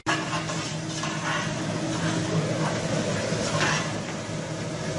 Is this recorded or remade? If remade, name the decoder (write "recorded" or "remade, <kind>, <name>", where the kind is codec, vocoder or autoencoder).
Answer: recorded